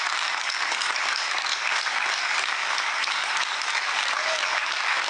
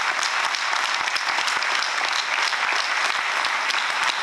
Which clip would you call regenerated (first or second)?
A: first